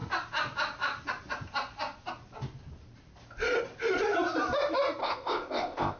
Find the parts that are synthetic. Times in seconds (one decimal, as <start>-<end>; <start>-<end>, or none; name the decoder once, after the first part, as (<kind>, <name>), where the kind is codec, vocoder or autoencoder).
5.0-6.0 (codec, ZipCodec)